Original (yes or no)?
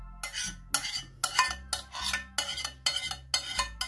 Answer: yes